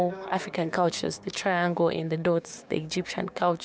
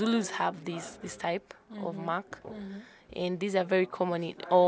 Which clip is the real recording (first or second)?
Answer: second